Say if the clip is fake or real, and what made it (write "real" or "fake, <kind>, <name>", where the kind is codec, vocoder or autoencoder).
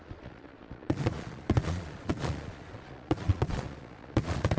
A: fake, vocoder, Vocos